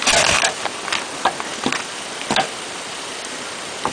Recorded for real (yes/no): yes